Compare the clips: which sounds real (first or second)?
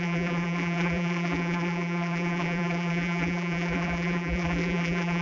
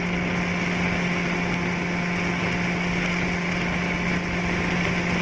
second